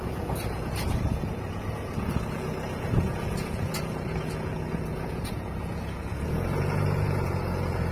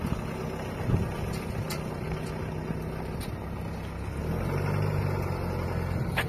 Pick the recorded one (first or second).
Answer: second